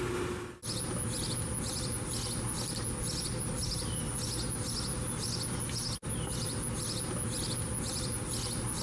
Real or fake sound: real